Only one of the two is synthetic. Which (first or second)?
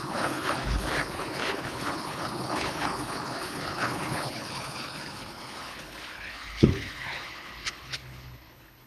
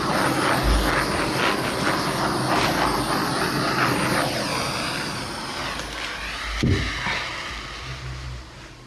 first